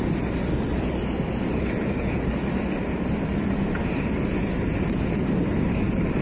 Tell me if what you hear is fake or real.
real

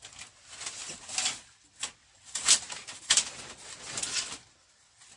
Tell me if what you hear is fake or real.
real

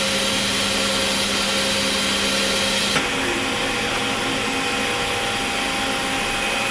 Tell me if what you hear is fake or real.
real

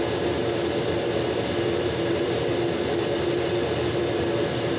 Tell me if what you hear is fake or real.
real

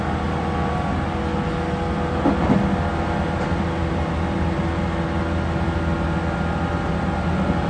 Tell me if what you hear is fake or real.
real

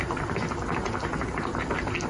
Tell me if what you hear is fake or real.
real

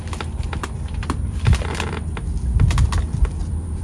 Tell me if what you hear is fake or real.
real